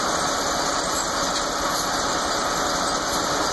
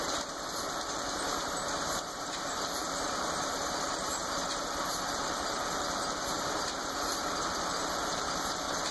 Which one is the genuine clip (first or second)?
first